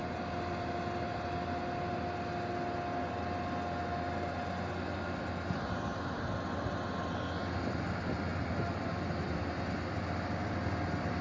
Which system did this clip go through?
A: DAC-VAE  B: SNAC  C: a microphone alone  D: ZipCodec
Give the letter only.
C